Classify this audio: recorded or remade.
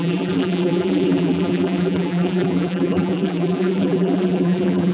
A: remade